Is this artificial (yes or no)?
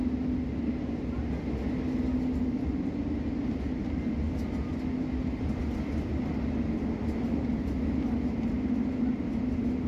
no